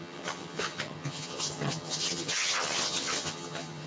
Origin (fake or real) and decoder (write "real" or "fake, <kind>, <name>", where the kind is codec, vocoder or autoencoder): fake, vocoder, HiFi-GAN